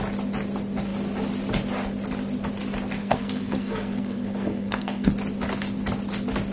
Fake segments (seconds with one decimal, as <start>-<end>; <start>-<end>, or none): 3.0-5.1